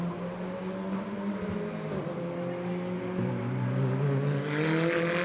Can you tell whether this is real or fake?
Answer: real